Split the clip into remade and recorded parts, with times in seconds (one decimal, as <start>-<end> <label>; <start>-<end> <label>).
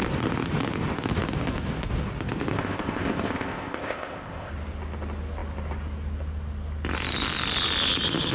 0.0-2.5 recorded; 2.5-4.5 remade; 4.5-8.3 recorded